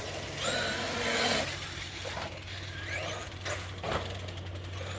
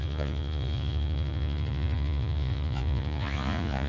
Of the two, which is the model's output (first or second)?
second